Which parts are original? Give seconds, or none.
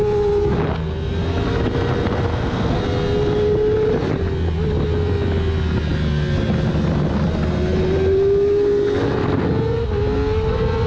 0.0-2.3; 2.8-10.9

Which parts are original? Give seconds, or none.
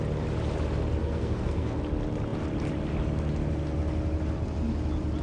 0.0-1.0; 1.8-5.2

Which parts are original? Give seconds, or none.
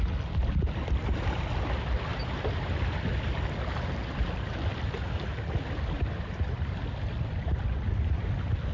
0.0-8.7